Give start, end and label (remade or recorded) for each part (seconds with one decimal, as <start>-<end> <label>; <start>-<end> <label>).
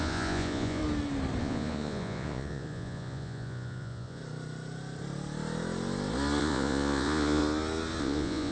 0.0-0.8 remade; 0.8-1.4 recorded; 1.4-4.2 remade; 4.2-6.4 recorded; 6.4-7.4 remade; 7.4-8.0 recorded; 8.0-8.5 remade